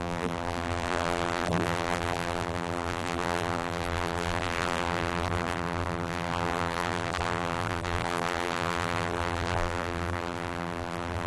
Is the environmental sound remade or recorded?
remade